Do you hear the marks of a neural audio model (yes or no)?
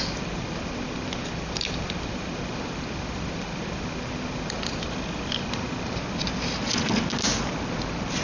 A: no